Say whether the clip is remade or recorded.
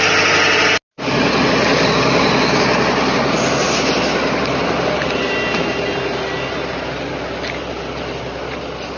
recorded